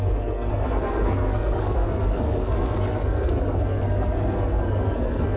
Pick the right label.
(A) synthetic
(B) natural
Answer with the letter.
A